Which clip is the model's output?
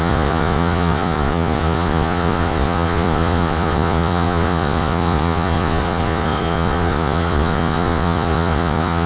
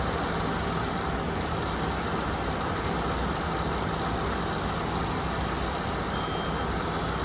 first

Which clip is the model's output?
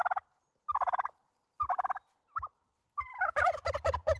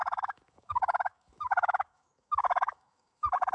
second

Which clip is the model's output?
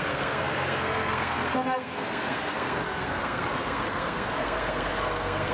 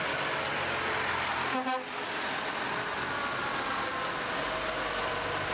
first